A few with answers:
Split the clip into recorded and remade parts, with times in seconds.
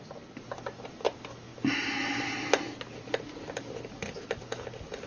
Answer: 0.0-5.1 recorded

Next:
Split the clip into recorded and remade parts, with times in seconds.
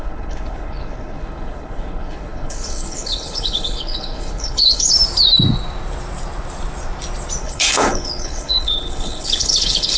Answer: 0.0-4.9 remade; 4.9-7.4 recorded; 7.4-10.0 remade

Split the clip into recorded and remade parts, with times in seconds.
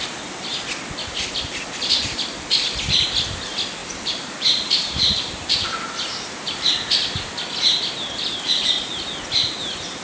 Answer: 0.0-3.8 recorded; 3.8-6.7 remade; 6.7-10.0 recorded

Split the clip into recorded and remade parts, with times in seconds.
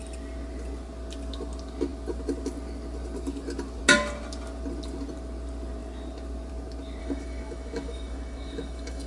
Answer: 0.0-7.0 recorded; 7.0-9.1 remade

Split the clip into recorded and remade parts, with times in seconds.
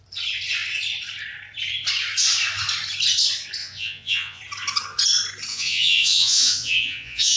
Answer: 0.0-3.6 recorded; 3.6-4.4 remade; 4.4-5.5 recorded; 5.5-7.4 remade